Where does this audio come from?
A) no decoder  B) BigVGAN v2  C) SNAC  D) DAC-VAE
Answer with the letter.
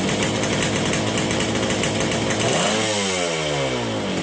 A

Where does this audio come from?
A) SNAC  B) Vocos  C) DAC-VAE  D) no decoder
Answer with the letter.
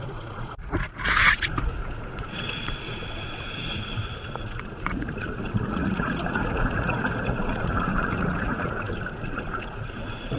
B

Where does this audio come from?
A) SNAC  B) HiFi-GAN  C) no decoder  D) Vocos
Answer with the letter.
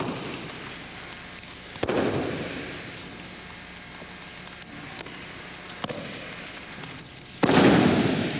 C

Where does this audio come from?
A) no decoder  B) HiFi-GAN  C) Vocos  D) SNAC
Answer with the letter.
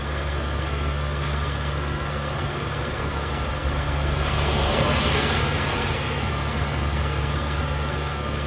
D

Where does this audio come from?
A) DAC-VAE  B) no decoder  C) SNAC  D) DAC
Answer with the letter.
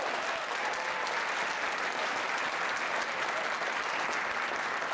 B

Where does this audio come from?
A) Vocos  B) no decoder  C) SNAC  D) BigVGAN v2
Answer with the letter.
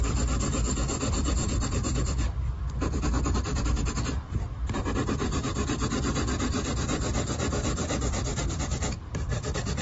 D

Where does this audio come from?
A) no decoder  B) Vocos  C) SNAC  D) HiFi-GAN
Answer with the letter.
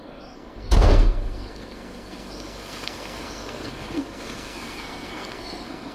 C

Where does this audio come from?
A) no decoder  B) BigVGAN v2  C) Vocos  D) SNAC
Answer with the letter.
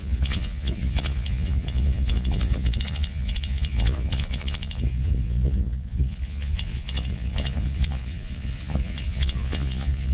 C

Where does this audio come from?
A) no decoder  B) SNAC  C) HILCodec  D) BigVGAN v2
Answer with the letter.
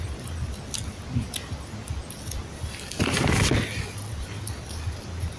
A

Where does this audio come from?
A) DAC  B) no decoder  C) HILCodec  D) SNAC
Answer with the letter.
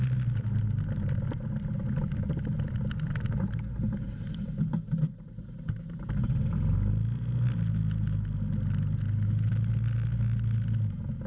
B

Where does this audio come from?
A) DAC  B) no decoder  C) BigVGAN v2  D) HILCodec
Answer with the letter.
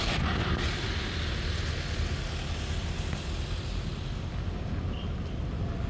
B